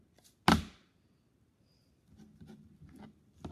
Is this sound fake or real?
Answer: real